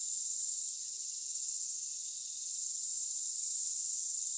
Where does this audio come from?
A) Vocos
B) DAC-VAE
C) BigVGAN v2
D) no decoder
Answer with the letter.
D